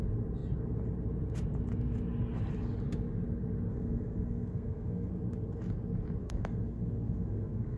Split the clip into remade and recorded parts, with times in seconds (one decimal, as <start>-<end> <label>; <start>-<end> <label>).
0.0-3.7 recorded; 3.7-5.1 remade; 5.1-6.2 recorded; 6.2-7.8 remade